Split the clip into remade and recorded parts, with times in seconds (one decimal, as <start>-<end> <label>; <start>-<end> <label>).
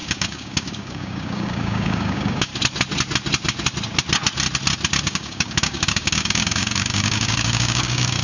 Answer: 0.0-2.5 remade; 2.5-5.0 recorded; 5.0-8.2 remade